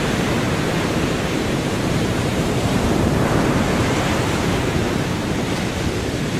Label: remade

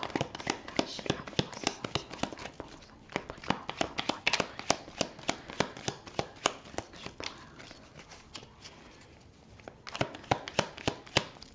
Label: recorded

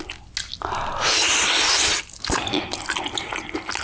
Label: recorded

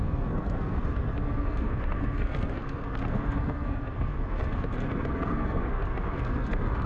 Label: remade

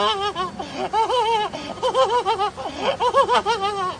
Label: recorded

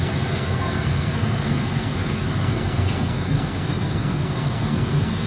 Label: remade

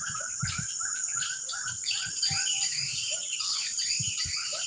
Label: remade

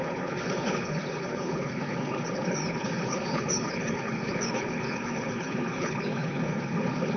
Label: remade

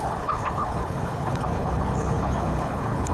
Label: remade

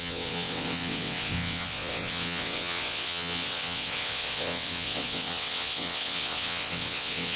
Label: remade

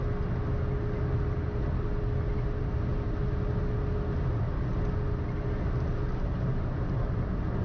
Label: recorded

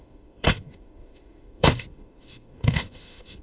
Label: remade